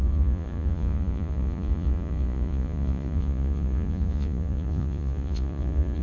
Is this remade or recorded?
remade